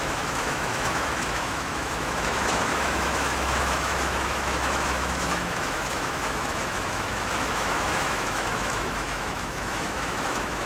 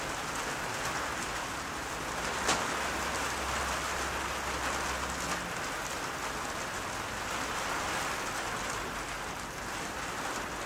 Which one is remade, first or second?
first